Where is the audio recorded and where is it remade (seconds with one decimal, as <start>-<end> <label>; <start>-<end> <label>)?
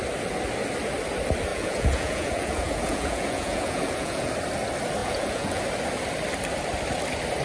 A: 0.0-1.5 recorded; 1.5-4.3 remade; 4.3-5.0 recorded; 5.0-5.6 remade; 5.6-7.4 recorded